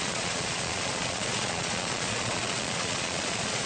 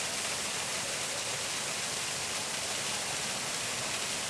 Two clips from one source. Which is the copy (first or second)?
first